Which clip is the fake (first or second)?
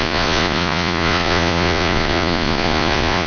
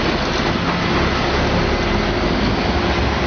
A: first